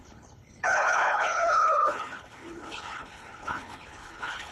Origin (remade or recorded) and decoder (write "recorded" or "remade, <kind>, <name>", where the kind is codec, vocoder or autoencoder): remade, codec, HILCodec